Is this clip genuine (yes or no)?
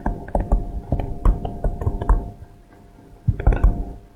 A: yes